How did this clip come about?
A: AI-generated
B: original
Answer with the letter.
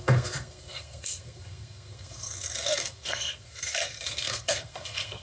A